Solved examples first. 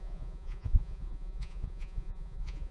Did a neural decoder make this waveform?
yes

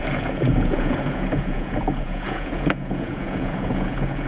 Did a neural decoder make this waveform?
yes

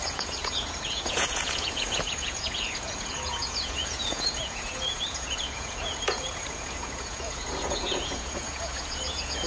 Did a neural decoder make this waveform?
yes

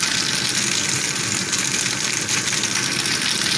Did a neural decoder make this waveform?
no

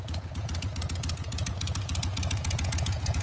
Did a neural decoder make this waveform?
yes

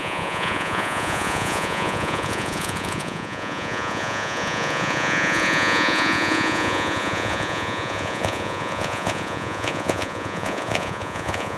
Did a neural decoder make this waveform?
yes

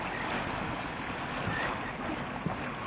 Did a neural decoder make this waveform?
no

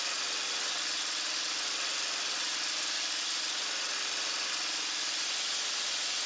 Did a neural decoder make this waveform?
no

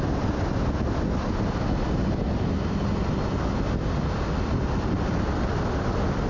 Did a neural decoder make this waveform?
no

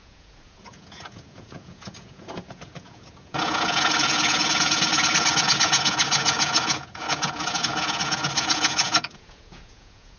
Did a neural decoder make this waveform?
yes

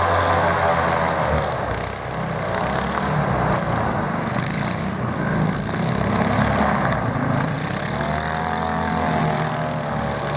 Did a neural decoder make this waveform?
no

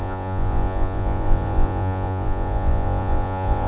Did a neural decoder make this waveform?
yes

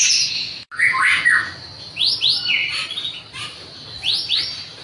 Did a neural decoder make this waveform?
no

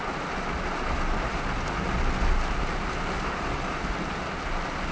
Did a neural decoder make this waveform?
no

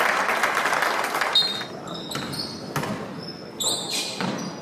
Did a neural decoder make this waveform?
no